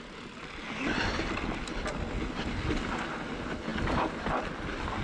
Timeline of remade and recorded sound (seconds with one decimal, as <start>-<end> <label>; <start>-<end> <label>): 0.0-5.0 recorded